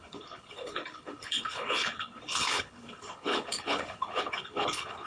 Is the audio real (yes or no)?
no